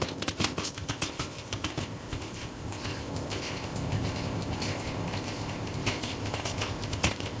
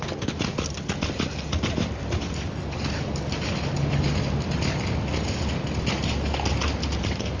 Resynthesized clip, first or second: first